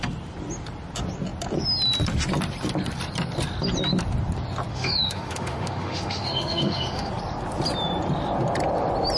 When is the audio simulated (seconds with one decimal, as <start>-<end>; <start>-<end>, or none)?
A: 4.7-7.1